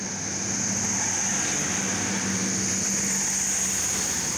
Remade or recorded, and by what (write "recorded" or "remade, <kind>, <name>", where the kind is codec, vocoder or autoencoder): recorded